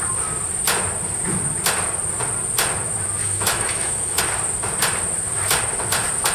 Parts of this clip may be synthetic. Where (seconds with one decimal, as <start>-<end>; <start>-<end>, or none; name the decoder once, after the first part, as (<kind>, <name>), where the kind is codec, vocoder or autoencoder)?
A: 3.2-4.2 (autoencoder, DAC-VAE)